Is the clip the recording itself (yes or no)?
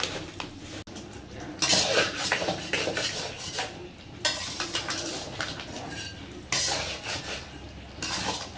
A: yes